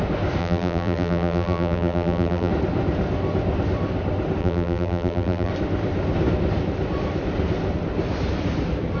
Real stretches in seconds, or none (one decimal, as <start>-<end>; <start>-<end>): 0.0-0.4; 2.5-4.4; 5.5-9.0